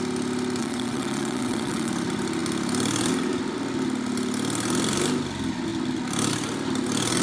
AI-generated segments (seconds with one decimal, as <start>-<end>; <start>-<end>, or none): 0.6-1.9